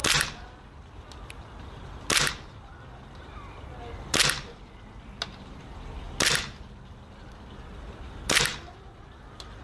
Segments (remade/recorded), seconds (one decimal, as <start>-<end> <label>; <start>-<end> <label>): 0.0-9.6 recorded